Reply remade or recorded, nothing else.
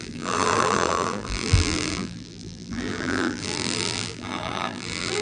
remade